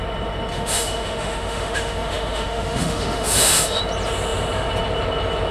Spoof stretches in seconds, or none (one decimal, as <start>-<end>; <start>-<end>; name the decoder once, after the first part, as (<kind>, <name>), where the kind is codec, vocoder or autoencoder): 0.5-3.8 (autoencoder, DAC-VAE)